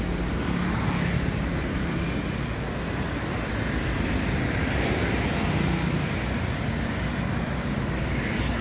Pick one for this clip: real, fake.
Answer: real